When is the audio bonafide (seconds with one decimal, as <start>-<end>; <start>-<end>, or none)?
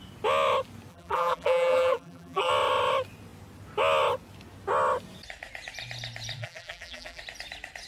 0.0-0.9; 2.5-6.4; 7.2-7.9